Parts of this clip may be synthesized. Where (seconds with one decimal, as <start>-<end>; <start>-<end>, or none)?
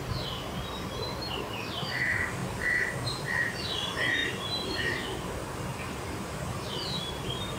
0.0-2.4; 3.1-4.2; 6.7-7.6